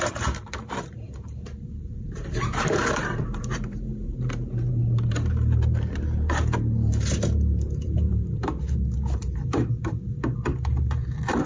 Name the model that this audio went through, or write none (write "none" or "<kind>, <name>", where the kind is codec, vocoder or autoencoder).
vocoder, BigVGAN v2